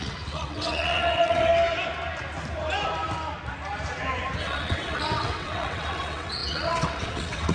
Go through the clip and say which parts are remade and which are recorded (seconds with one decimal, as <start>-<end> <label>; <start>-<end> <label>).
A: 0.0-1.5 remade; 1.5-4.4 recorded; 4.4-7.5 remade

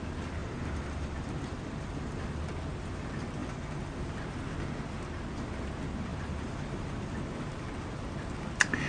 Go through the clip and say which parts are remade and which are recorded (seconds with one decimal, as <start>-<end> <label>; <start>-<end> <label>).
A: 0.0-0.4 recorded; 0.4-2.5 remade; 2.5-3.4 recorded; 3.4-4.0 remade; 4.0-6.1 recorded; 6.1-7.2 remade; 7.2-8.9 recorded

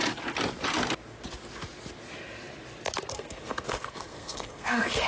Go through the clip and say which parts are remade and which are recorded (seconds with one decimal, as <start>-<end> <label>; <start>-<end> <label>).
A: 0.0-3.1 recorded; 3.1-5.1 remade

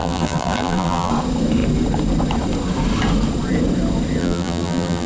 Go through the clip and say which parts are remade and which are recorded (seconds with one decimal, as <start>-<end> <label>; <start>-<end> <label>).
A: 0.0-1.1 remade; 1.1-4.2 recorded; 4.2-5.1 remade

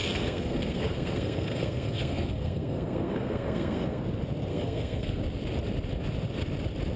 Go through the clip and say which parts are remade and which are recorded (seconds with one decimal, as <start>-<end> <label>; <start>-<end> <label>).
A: 0.0-4.0 remade; 4.0-4.5 recorded; 4.5-5.2 remade; 5.2-7.0 recorded

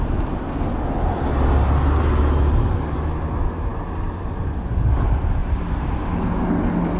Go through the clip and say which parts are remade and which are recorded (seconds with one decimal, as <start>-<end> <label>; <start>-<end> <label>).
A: 0.0-5.4 recorded; 5.4-6.1 remade; 6.1-7.0 recorded

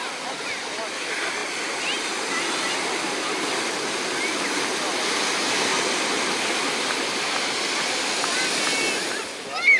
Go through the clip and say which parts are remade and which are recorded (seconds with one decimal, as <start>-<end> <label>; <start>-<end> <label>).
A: 0.0-5.7 remade; 5.7-7.8 recorded; 7.8-8.7 remade; 8.7-9.3 recorded; 9.3-9.8 remade

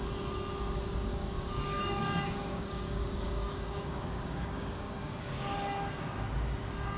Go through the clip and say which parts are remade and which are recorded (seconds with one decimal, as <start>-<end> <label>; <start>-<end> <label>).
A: 0.0-1.1 recorded; 1.1-5.3 remade; 5.3-7.0 recorded